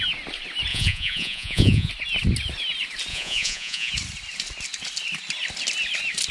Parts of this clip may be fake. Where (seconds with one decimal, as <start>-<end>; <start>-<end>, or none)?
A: 0.7-1.9; 3.1-3.9